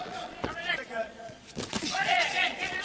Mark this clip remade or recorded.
remade